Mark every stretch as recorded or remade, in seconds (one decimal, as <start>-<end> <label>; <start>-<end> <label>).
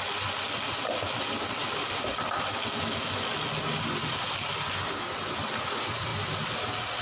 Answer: 0.0-7.0 recorded